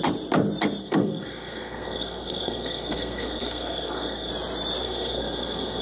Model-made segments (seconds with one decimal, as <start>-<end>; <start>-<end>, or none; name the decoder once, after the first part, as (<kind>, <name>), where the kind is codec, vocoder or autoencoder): 0.8-4.3 (codec, SNAC); 4.8-5.8